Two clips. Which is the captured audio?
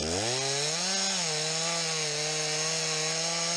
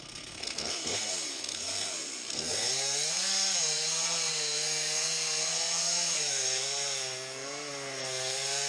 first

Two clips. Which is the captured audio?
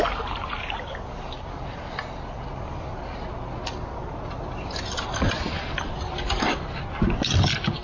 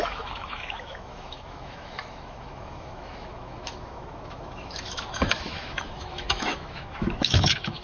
first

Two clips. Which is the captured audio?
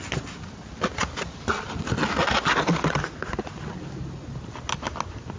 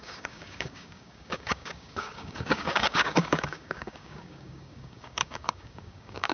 first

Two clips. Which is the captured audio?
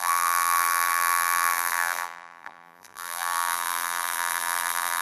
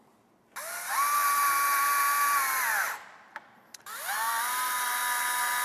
second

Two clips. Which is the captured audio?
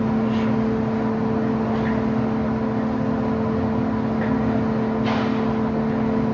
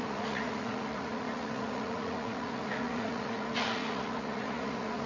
first